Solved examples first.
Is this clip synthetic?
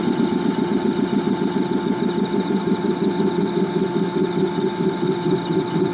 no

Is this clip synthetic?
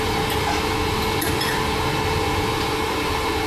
no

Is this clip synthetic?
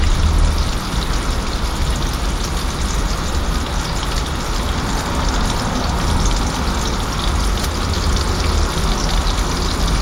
no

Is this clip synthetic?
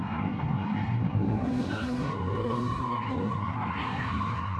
yes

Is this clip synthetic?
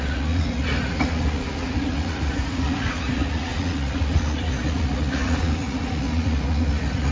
yes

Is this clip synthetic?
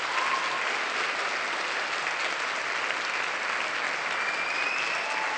no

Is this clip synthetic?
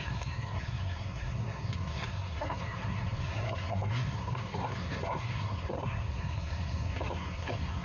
yes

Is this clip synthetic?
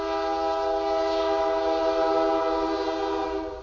no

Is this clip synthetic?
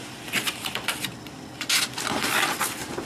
no